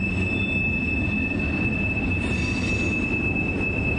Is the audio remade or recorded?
recorded